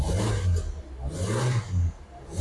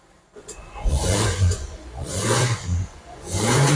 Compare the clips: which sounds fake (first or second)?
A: second